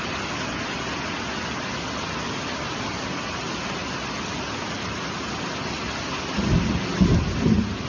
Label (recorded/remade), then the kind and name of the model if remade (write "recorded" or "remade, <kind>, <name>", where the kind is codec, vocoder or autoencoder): recorded